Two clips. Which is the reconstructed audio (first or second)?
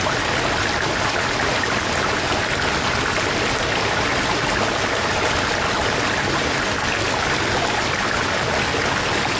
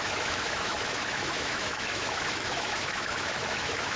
second